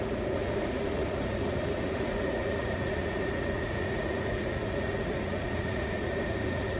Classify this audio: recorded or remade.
remade